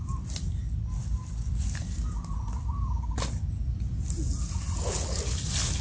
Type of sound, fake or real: real